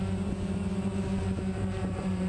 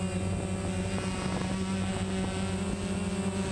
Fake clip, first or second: first